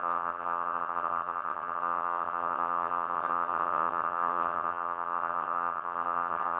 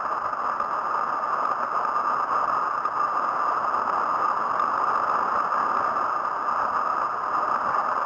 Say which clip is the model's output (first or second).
first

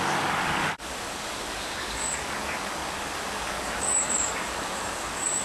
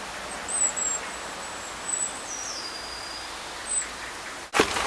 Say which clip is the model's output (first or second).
first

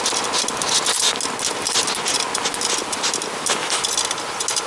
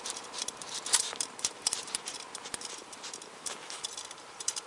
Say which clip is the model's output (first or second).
second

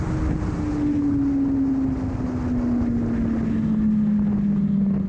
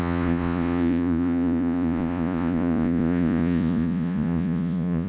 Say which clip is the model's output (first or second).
second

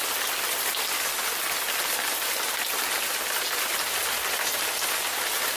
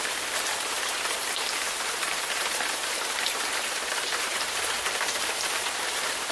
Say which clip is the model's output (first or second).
second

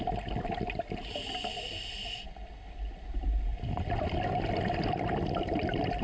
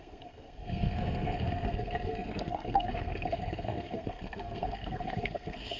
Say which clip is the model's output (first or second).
second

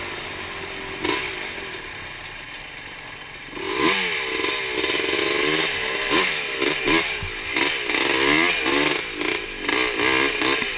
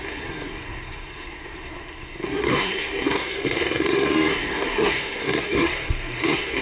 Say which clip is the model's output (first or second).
second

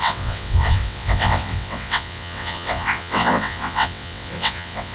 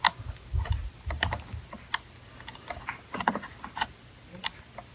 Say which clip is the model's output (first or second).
first